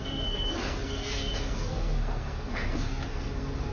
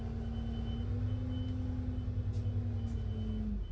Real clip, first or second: second